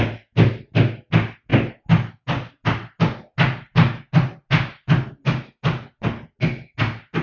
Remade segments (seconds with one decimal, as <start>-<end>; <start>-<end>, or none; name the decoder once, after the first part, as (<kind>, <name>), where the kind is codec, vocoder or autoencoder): none